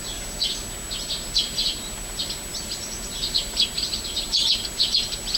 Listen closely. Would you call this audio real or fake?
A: real